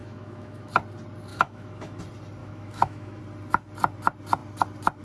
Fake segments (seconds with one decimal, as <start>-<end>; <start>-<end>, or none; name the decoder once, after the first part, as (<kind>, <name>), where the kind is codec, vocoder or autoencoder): 0.0-0.7 (autoencoder, DAC-VAE); 1.3-2.0; 2.4-3.2